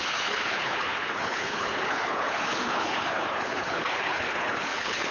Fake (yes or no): yes